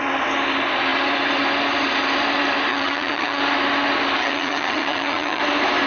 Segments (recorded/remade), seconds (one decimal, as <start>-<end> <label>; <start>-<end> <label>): 0.0-2.7 recorded; 2.7-3.4 remade; 3.4-4.2 recorded; 4.2-5.4 remade; 5.4-5.9 recorded